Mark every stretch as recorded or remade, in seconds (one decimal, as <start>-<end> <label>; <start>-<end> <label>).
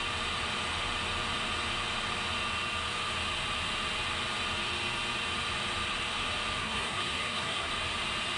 0.0-6.6 recorded; 6.6-7.7 remade; 7.7-8.4 recorded